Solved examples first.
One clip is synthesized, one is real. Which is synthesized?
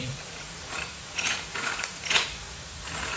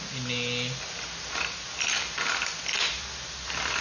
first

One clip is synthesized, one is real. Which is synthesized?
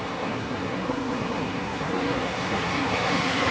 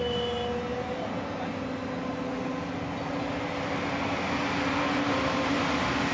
first